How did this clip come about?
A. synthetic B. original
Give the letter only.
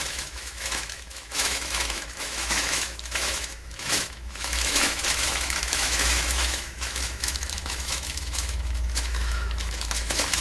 A